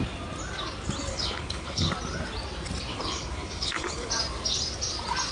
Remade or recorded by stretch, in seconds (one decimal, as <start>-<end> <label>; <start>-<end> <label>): 0.0-1.1 recorded; 1.1-1.9 remade; 1.9-2.9 recorded; 2.9-4.1 remade; 4.1-5.3 recorded